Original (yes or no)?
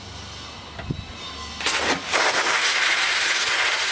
yes